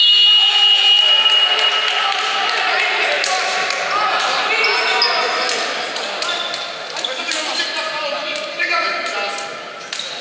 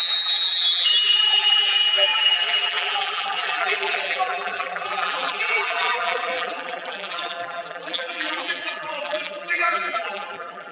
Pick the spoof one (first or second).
second